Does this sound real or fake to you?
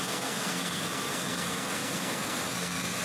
fake